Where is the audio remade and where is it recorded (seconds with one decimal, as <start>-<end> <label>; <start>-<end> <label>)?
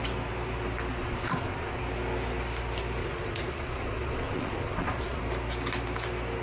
0.0-1.0 recorded; 1.0-1.8 remade; 1.8-3.0 recorded; 3.0-5.2 remade; 5.2-6.4 recorded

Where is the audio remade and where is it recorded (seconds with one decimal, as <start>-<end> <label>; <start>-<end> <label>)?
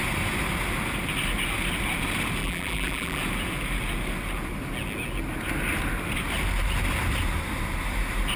0.0-2.4 recorded; 2.4-3.2 remade; 3.2-8.4 recorded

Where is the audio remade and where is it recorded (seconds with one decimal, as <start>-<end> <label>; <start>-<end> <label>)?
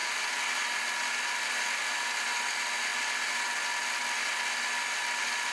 0.0-5.5 recorded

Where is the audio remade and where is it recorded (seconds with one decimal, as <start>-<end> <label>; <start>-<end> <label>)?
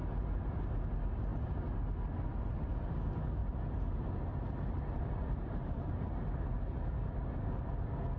0.0-3.4 recorded; 3.4-3.9 remade; 3.9-4.3 recorded; 4.3-6.4 remade; 6.4-8.2 recorded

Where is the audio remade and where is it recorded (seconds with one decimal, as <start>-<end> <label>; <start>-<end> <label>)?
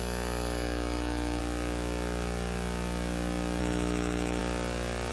0.0-1.4 remade; 1.4-3.6 recorded; 3.6-4.4 remade; 4.4-5.1 recorded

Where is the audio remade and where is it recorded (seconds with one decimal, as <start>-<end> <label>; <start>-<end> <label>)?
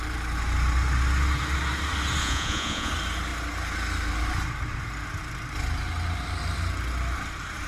0.0-2.2 recorded; 2.2-2.9 remade; 2.9-7.7 recorded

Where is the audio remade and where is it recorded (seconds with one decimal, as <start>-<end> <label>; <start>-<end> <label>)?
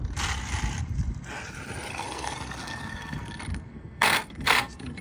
0.0-1.9 recorded; 1.9-5.0 remade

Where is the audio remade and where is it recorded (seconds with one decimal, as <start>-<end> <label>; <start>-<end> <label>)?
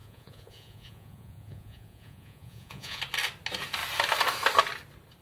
0.0-3.0 remade; 3.0-5.2 recorded